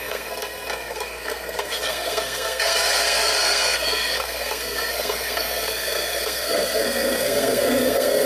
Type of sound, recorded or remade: remade